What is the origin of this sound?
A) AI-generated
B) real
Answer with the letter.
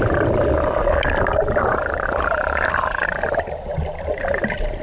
B